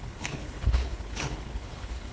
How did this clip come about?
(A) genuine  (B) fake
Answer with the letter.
B